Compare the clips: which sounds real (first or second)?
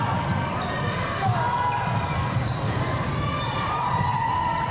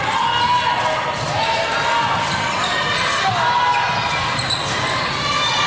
second